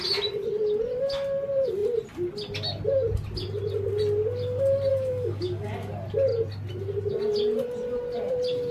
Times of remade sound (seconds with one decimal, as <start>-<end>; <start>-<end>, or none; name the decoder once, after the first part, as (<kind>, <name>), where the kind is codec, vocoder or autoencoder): 4.9-5.7 (codec, DAC)